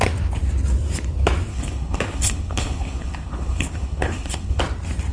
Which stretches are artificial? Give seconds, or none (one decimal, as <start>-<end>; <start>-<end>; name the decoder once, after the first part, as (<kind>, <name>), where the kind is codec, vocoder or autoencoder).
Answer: 1.5-4.6 (codec, HILCodec)